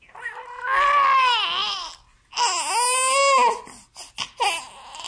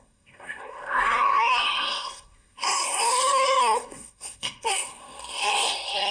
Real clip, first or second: first